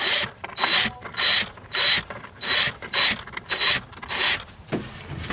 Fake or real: real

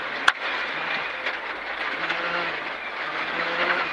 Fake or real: real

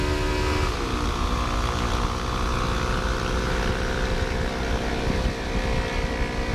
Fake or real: real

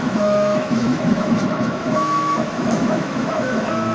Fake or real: fake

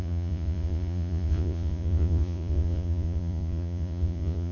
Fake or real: fake